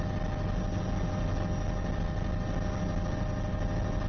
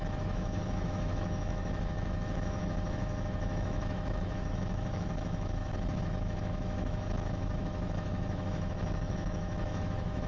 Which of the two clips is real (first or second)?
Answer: first